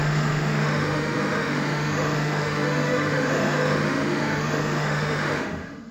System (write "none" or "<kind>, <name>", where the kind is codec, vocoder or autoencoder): autoencoder, DAC-VAE